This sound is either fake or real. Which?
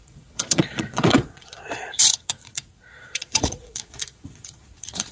fake